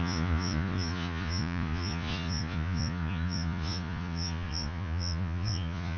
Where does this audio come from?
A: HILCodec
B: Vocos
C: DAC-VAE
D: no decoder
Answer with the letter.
B